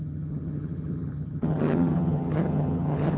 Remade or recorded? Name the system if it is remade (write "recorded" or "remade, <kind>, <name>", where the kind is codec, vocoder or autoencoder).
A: remade, vocoder, HiFi-GAN